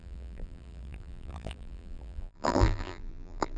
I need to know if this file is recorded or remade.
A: remade